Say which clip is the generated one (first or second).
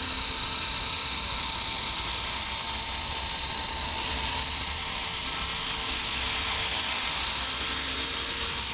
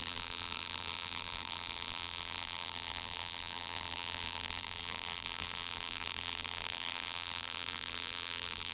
second